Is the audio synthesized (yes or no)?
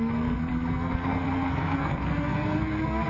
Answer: yes